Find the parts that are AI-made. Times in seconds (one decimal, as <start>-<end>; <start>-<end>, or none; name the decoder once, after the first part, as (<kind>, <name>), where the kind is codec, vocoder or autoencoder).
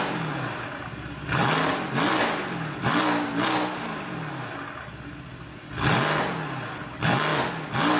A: none